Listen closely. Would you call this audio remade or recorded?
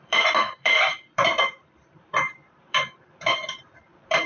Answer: remade